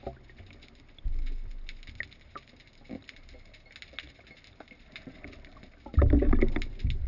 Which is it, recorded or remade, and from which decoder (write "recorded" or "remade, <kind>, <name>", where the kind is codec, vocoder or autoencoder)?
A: recorded